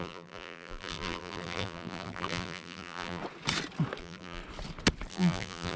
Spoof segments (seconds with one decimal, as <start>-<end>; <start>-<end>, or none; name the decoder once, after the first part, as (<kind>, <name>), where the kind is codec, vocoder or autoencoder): 0.0-3.2 (vocoder, BigVGAN v2); 4.0-4.4; 5.1-5.8